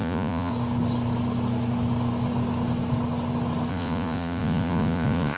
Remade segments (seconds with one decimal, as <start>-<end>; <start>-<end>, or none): 0.0-0.5; 3.7-5.4